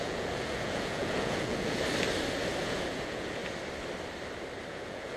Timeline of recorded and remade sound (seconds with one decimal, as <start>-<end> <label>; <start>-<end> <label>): 0.0-1.8 remade; 1.8-2.6 recorded; 2.6-3.4 remade; 3.4-4.7 recorded; 4.7-5.2 remade